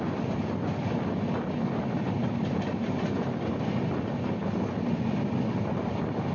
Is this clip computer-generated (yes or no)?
no